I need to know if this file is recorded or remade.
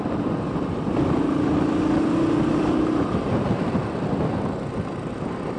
recorded